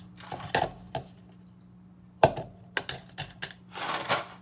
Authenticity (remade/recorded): recorded